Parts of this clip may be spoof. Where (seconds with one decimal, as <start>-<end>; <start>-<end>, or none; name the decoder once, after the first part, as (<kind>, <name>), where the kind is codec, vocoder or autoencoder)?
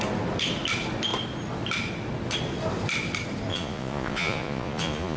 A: 3.5-5.2 (vocoder, Vocos)